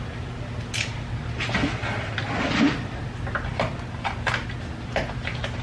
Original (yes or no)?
yes